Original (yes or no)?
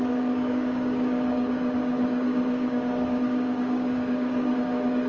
no